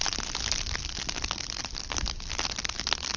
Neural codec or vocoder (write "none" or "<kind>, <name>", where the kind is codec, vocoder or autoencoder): none